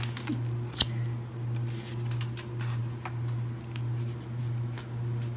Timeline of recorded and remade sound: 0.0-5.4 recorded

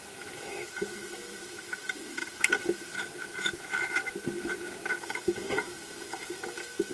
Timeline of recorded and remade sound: 0.0-6.9 remade

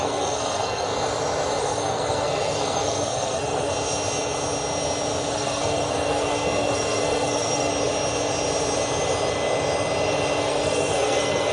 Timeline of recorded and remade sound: 0.0-0.9 remade; 0.9-1.6 recorded; 1.6-3.7 remade; 3.7-5.3 recorded; 5.3-7.7 remade; 7.7-10.4 recorded; 10.4-11.5 remade